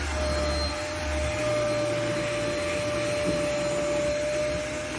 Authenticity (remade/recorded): recorded